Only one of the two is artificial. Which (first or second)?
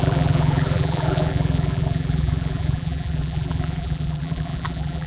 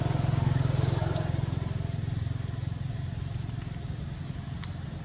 first